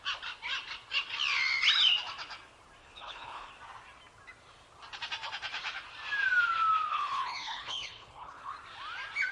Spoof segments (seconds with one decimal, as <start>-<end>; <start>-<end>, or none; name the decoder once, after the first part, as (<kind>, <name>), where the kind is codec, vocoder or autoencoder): 2.8-3.5 (codec, HILCodec); 6.9-8.5